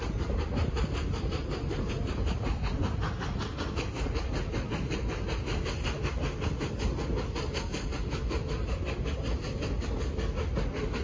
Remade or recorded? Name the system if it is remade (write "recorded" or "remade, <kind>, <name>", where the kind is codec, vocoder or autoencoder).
recorded